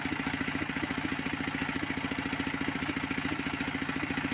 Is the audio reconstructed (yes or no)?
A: no